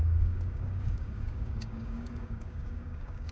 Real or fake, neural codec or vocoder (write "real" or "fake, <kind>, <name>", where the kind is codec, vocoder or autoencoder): fake, codec, DAC